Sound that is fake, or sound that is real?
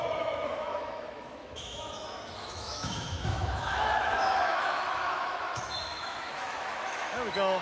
fake